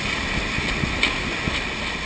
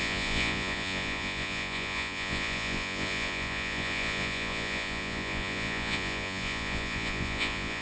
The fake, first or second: second